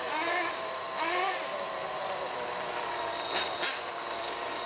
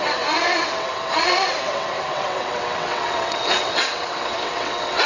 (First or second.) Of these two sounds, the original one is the first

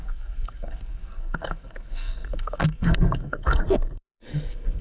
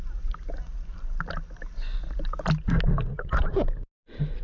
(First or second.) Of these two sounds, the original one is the second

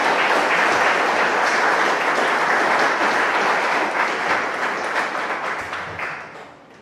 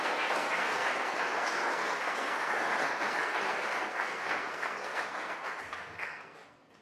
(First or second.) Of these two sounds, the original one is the first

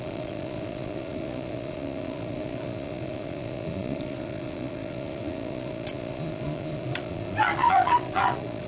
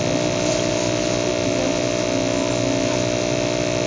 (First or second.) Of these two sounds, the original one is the second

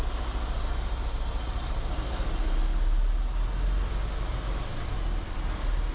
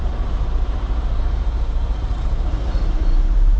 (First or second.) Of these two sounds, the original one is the first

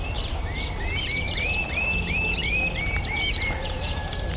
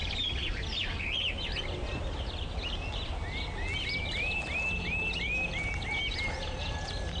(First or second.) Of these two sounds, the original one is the second